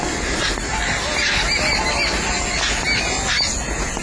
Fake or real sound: real